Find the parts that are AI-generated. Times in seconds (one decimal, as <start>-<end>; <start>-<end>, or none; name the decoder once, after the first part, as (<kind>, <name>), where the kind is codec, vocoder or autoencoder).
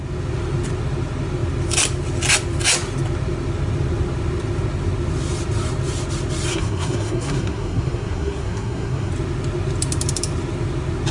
6.5-9.1 (codec, SNAC)